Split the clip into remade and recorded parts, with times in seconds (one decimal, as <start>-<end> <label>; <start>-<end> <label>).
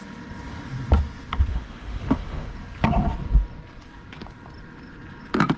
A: 0.0-1.5 recorded; 1.5-2.5 remade; 2.5-5.6 recorded